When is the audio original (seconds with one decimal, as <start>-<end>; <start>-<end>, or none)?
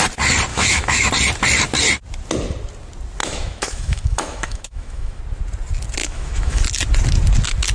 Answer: 0.0-0.5; 1.1-3.2; 5.2-6.0; 6.6-7.7